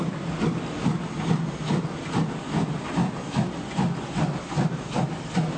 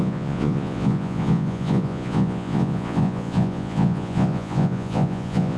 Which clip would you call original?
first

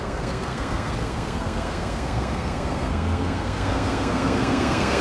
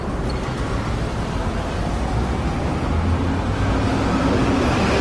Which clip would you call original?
second